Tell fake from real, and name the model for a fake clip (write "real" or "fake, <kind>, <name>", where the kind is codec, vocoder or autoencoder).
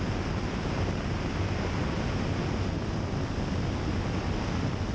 real